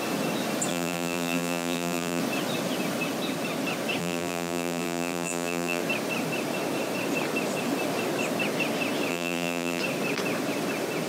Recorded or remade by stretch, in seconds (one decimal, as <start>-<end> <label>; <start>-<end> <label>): 0.0-0.7 recorded; 0.7-2.2 remade; 2.2-4.0 recorded; 4.0-5.8 remade; 5.8-9.1 recorded; 9.1-9.8 remade; 9.8-11.1 recorded